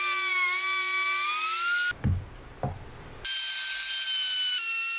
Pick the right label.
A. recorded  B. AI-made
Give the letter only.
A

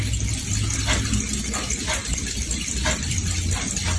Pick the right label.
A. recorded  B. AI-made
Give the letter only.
A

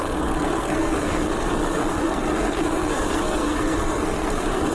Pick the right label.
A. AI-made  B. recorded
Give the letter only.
A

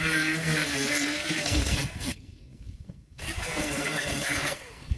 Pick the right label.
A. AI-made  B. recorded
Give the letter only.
A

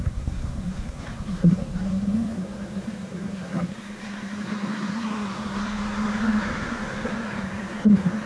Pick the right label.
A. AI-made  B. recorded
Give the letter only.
A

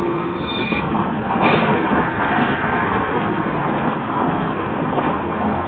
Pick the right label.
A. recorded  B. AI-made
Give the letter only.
B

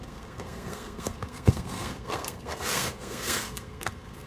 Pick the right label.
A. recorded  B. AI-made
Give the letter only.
B